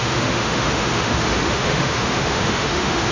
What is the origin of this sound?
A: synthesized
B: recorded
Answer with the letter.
A